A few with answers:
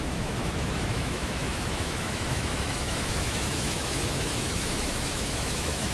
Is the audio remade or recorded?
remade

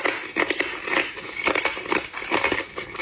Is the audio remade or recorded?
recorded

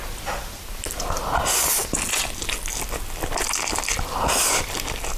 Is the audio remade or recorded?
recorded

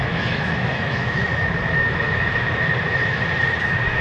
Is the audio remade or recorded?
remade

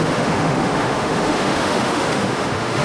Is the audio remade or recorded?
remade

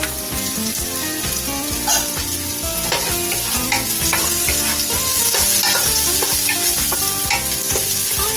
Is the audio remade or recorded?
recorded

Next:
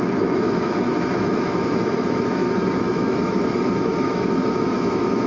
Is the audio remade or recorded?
remade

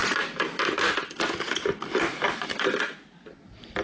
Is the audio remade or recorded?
recorded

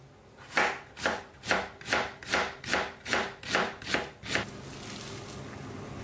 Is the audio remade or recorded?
recorded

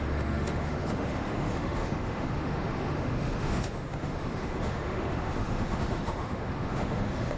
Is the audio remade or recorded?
remade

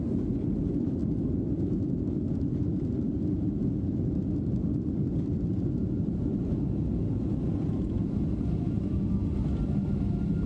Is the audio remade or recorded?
recorded